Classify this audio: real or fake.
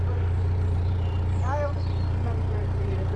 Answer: fake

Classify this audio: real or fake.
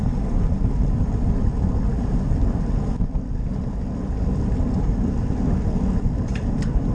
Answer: real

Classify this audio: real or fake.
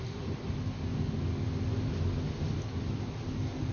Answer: real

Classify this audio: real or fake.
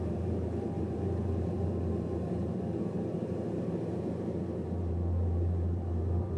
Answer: fake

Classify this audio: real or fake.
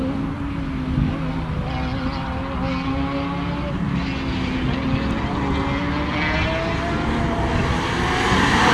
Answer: real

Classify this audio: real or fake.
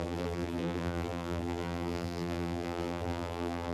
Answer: fake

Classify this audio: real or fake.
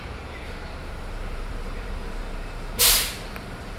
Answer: fake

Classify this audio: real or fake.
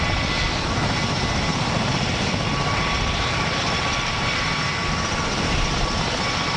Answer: real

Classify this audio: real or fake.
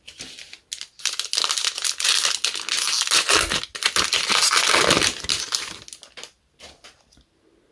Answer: real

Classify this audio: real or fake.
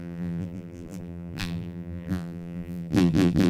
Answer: fake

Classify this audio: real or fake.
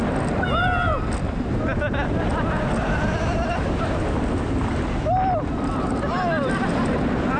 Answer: real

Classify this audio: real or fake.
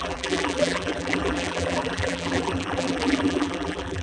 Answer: fake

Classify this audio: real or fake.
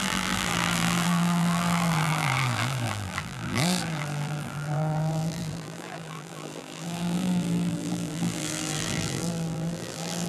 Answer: fake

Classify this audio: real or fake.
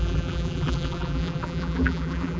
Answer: fake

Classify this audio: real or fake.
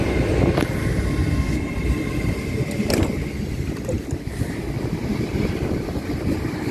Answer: fake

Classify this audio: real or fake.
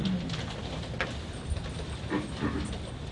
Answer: real